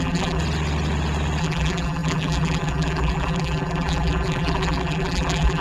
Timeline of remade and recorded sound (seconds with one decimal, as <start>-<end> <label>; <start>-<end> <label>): 0.0-0.4 remade; 0.4-1.4 recorded; 1.4-5.6 remade